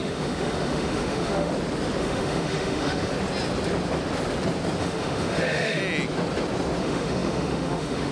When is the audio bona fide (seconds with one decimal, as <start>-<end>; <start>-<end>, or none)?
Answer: 1.5-2.0; 3.1-4.8; 5.8-6.8